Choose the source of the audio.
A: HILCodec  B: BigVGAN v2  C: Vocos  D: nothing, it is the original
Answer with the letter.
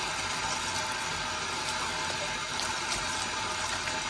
D